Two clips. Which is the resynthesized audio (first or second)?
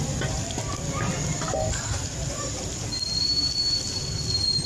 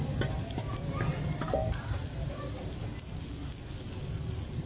first